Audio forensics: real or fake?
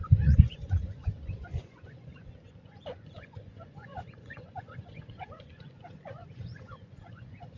fake